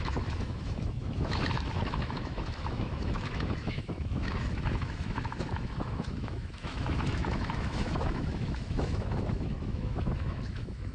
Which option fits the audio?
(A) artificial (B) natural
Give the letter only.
A